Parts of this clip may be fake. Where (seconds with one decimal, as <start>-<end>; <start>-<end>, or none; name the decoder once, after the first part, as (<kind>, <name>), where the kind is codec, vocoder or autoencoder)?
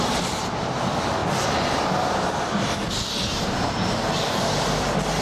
none